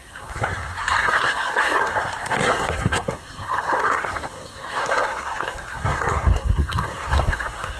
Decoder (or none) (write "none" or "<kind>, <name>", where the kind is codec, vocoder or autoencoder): codec, SNAC